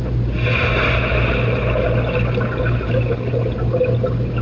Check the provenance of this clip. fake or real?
real